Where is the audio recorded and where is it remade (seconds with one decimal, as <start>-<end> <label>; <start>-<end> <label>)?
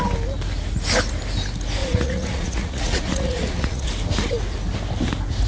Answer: 0.0-1.8 recorded; 1.8-3.9 remade; 3.9-5.5 recorded